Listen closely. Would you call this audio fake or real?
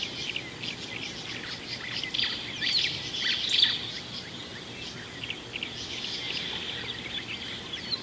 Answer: real